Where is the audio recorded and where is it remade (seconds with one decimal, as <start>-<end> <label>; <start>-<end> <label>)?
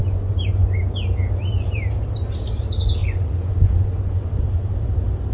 0.0-0.8 remade; 0.8-3.0 recorded; 3.0-4.3 remade; 4.3-5.3 recorded